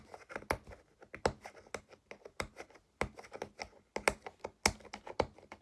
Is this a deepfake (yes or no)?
no